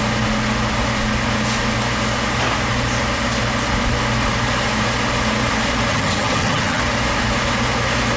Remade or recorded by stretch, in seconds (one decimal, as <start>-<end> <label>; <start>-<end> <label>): 0.0-5.9 recorded; 5.9-6.8 remade; 6.8-8.2 recorded